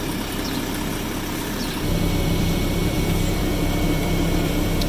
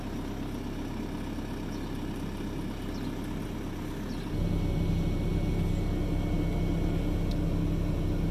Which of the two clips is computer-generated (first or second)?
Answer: first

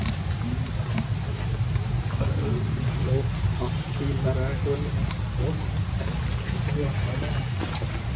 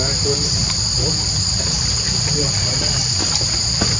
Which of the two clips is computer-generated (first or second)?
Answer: second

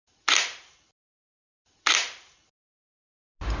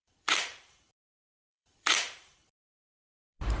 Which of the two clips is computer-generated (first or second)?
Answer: second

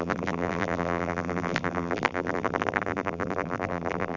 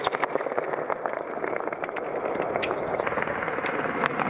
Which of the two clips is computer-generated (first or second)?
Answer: first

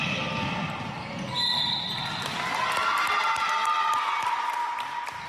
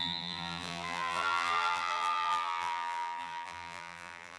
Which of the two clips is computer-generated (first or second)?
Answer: second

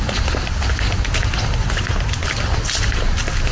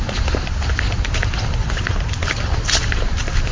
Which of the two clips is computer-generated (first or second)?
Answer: second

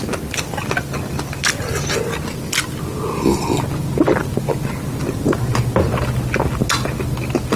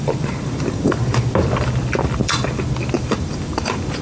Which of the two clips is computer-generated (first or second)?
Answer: second